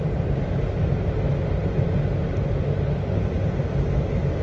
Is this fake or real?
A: real